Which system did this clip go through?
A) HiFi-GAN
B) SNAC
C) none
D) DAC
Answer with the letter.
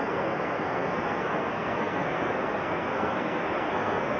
B